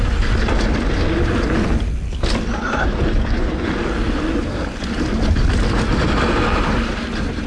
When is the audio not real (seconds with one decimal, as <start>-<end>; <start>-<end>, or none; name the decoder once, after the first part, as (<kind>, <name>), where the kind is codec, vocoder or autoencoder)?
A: 3.1-3.7 (vocoder, Vocos)